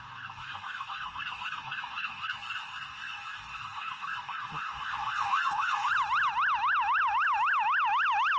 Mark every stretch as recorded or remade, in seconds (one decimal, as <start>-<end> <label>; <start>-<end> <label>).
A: 0.0-5.9 remade; 5.9-8.4 recorded

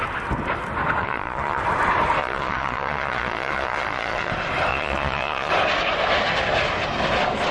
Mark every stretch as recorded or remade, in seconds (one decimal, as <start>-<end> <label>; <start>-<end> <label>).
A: 0.0-1.0 recorded; 1.0-1.6 remade; 1.6-2.2 recorded; 2.2-4.3 remade; 4.3-4.7 recorded; 4.7-5.5 remade; 5.5-7.5 recorded

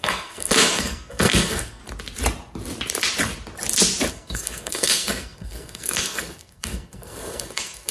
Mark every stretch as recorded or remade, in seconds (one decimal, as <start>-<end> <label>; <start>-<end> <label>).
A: 0.0-1.8 remade; 1.8-4.1 recorded; 4.1-7.9 remade

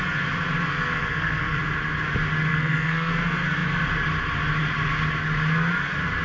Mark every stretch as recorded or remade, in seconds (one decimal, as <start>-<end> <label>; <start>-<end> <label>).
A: 0.0-0.7 recorded; 0.7-1.6 remade; 1.6-2.5 recorded; 2.5-3.1 remade; 3.1-6.2 recorded

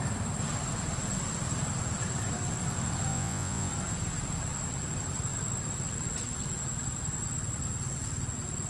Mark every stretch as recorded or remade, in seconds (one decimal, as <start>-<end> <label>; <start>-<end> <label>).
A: 0.0-3.1 recorded; 3.1-3.7 remade; 3.7-8.7 recorded

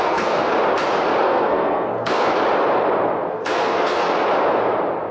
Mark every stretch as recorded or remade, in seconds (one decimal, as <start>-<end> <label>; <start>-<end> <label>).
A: 0.0-0.5 remade; 0.5-1.2 recorded; 1.2-2.3 remade; 2.3-3.3 recorded; 3.3-4.0 remade; 4.0-5.1 recorded

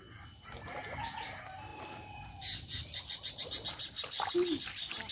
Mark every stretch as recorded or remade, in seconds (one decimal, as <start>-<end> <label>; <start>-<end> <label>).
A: 0.0-5.1 recorded